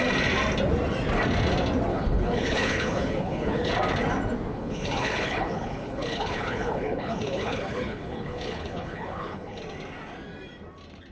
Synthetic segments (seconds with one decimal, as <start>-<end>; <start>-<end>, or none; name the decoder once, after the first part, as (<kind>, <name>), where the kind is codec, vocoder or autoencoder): 1.9-3.7 (codec, HILCodec); 4.5-9.6